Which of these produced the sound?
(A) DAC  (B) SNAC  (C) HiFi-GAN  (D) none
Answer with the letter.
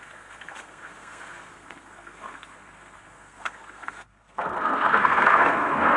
B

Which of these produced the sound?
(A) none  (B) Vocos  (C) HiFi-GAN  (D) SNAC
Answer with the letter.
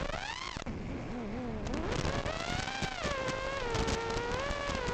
A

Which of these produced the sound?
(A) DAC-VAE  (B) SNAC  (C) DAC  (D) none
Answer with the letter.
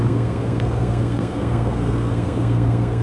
B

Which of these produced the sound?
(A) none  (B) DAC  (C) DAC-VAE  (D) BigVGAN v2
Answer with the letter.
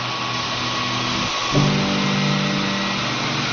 A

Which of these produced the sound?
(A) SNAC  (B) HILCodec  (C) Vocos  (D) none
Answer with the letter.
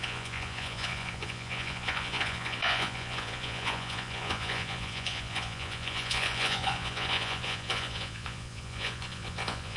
C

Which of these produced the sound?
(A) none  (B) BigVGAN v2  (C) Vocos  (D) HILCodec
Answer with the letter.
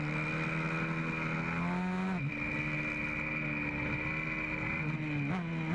A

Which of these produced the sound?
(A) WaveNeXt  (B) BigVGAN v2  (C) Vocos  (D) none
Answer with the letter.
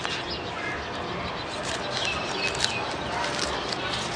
D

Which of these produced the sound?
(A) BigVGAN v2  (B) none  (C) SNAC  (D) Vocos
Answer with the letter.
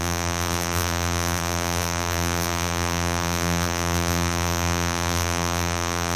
A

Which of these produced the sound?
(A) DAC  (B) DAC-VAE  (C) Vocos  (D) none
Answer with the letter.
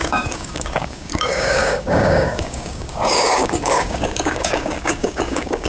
A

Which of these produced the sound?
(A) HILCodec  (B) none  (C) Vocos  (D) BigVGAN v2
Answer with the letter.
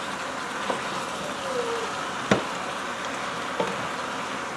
B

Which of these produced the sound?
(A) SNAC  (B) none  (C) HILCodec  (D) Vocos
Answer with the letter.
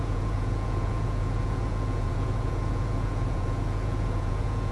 D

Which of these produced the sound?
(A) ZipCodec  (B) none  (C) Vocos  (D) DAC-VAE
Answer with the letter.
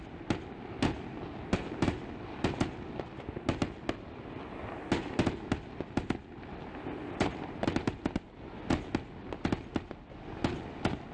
B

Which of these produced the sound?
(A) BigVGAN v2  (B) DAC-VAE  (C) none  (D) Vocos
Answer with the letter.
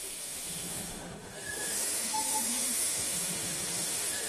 B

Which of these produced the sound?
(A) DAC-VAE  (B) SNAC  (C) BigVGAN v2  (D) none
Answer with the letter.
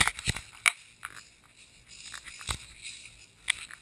D